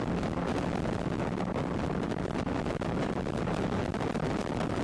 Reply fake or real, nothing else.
real